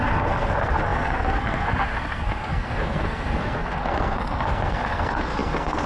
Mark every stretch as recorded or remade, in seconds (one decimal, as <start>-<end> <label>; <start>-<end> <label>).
0.0-5.9 remade